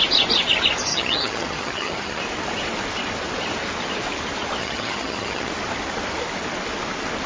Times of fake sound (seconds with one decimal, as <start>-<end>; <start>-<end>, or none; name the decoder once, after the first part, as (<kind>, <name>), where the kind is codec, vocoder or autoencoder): 0.9-2.2 (vocoder, HiFi-GAN); 4.6-5.5